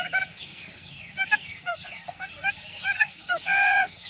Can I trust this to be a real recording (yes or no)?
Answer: no